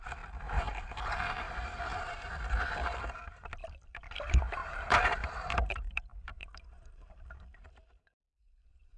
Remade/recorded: remade